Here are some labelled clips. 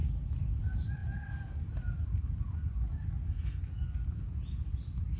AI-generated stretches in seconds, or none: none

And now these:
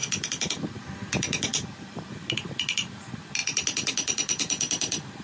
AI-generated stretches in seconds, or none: none

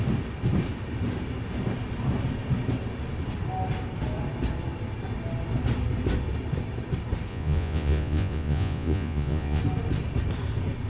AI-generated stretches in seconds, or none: 7.3-9.6 (vocoder, Vocos)

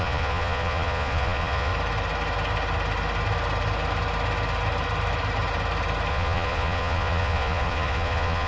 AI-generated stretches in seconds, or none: 0.0-1.7 (vocoder, Vocos); 6.1-8.5

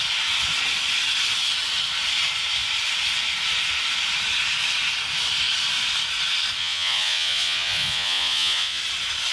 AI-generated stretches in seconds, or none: 6.6-8.8 (vocoder, Vocos)

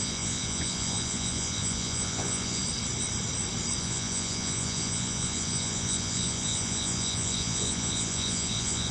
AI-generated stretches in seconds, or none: 0.0-2.6 (vocoder, Vocos); 3.8-8.9